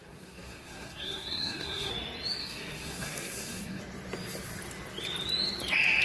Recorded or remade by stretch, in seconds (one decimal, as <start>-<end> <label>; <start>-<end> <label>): 0.0-1.9 remade; 1.9-2.4 recorded; 2.4-3.8 remade; 3.8-6.0 recorded